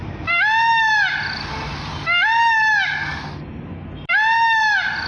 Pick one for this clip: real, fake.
real